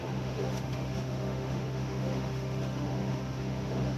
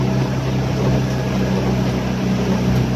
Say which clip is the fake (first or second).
first